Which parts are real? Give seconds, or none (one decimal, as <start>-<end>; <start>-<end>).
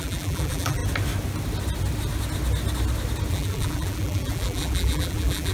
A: 0.8-3.3